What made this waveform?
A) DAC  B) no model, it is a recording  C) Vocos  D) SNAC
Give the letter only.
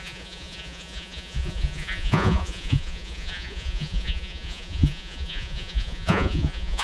C